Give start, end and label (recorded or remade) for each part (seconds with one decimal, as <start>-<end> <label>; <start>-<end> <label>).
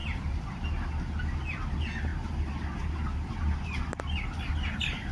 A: 0.0-0.6 remade; 0.6-5.1 recorded